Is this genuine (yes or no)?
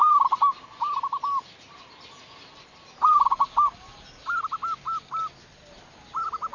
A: yes